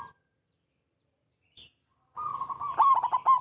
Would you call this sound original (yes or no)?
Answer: yes